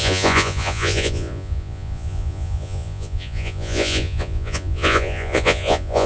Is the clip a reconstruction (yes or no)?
yes